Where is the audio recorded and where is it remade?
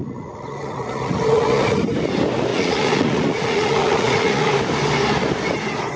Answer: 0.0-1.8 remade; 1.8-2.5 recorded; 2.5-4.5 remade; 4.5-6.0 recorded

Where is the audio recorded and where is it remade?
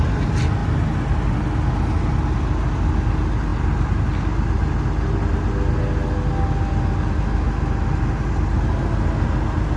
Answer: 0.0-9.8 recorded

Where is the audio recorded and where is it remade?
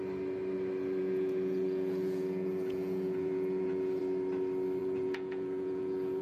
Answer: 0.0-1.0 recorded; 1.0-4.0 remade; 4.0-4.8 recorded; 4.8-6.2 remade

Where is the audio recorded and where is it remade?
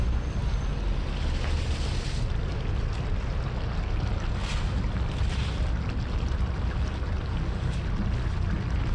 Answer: 0.0-8.9 recorded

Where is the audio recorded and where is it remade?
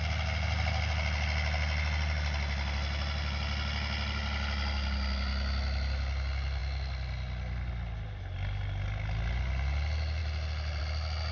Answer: 0.0-11.3 recorded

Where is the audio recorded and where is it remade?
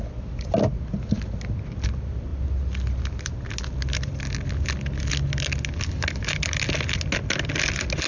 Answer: 0.0-8.1 recorded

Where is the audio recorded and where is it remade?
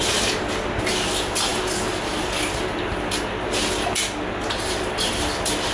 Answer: 0.0-5.7 recorded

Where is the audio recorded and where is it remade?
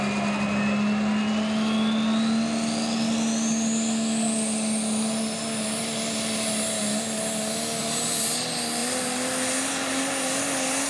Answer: 0.0-10.9 recorded